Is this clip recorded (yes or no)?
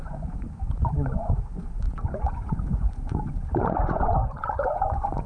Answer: no